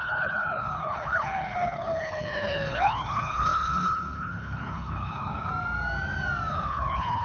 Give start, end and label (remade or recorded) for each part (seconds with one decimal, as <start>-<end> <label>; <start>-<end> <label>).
0.0-5.5 remade; 5.5-6.5 recorded; 6.5-7.2 remade